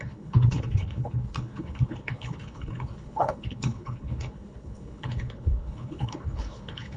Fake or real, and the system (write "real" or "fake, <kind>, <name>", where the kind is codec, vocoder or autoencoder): fake, codec, HILCodec